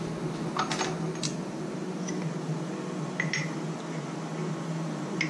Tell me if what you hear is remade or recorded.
recorded